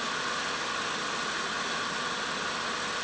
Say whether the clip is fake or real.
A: real